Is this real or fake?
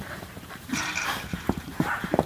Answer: fake